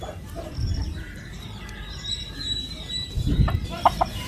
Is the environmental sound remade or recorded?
remade